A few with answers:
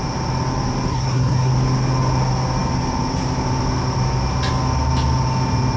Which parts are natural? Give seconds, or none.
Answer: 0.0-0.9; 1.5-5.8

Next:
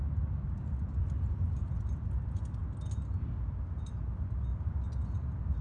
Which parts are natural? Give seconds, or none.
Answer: 0.0-5.6

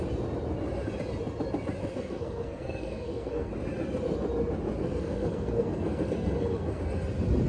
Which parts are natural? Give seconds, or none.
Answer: 0.0-1.8; 3.5-4.8; 6.8-7.5